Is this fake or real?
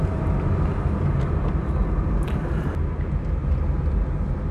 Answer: real